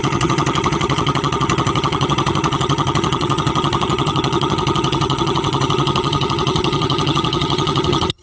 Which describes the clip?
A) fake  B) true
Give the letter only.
A